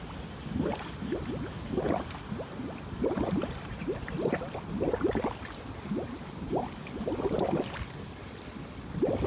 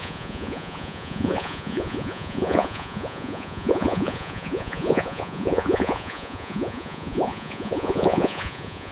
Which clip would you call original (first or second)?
first